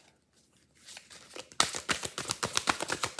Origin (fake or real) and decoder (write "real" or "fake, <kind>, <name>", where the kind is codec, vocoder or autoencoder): real